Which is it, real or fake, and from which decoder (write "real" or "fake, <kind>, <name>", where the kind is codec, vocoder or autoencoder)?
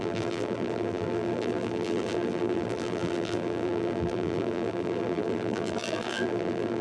fake, vocoder, BigVGAN v2